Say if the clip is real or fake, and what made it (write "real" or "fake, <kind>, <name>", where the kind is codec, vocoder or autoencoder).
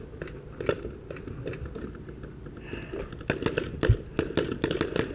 real